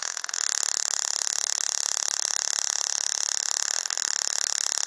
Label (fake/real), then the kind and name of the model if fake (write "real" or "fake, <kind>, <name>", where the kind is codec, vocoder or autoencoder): real